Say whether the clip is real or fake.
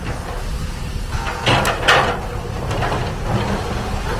real